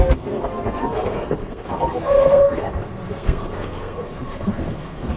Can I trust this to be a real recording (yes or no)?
no